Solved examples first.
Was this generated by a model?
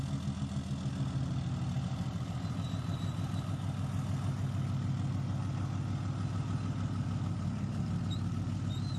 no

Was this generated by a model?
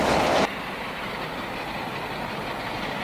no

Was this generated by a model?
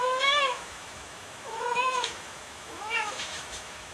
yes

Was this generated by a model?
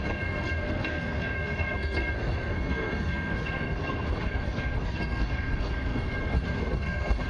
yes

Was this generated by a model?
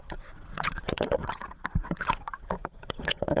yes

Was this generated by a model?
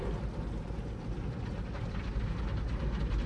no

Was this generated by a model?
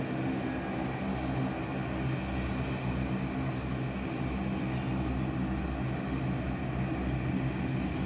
no